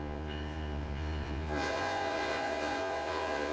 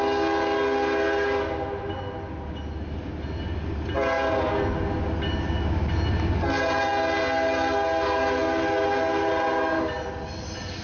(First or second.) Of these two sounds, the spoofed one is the first